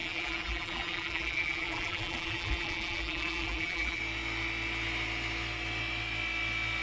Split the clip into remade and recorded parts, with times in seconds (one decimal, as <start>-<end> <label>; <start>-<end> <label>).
0.0-4.0 remade; 4.0-6.8 recorded